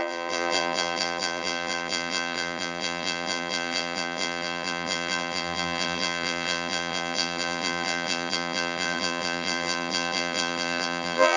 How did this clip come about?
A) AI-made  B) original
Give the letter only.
A